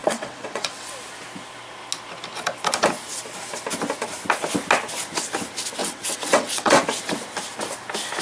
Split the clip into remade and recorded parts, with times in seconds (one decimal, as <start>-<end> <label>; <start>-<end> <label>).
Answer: 0.0-0.9 remade; 0.9-5.8 recorded; 5.8-6.8 remade; 6.8-8.2 recorded